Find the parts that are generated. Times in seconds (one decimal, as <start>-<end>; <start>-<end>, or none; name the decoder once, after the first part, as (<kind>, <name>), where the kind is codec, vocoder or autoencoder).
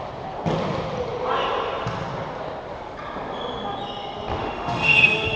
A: 4.4-5.4 (autoencoder, DAC-VAE)